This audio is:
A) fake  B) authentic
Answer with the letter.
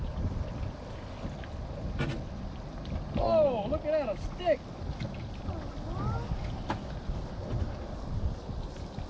B